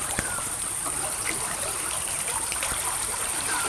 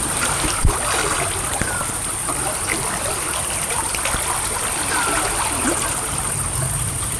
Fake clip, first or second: first